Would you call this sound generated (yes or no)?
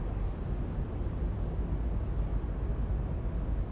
no